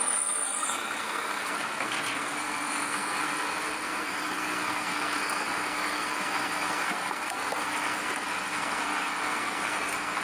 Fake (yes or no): yes